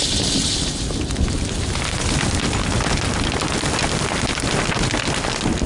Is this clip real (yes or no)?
yes